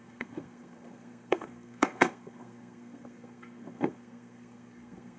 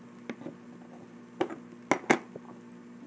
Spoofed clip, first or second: first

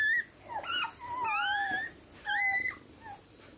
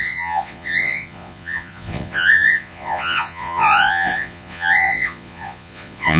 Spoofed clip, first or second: second